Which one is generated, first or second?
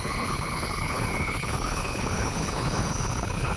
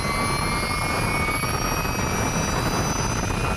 first